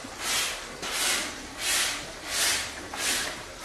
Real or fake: real